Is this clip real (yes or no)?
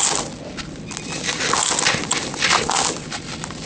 yes